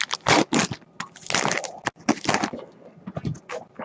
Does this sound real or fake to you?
real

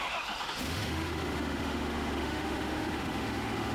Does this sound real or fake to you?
fake